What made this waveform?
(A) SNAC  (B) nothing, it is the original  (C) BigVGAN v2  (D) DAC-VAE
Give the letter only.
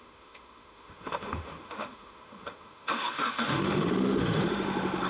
D